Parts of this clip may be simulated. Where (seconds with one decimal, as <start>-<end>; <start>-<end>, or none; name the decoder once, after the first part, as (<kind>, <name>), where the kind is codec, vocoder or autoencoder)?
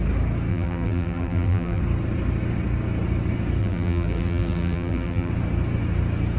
0.5-1.8 (vocoder, BigVGAN v2); 3.6-5.3